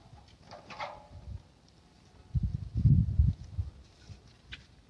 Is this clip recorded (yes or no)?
yes